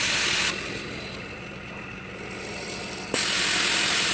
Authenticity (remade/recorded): recorded